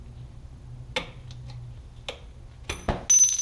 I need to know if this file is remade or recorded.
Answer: recorded